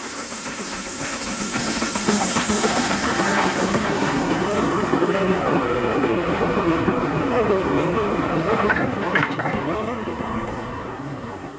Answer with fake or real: fake